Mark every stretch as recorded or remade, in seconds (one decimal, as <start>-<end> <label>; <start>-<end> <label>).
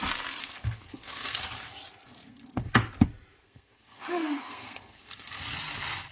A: 0.0-0.4 recorded; 0.4-1.4 remade; 1.4-2.1 recorded; 2.1-2.7 remade; 2.7-3.4 recorded; 3.4-5.4 remade; 5.4-6.1 recorded